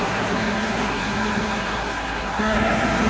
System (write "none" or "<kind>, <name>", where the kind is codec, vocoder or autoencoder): codec, SNAC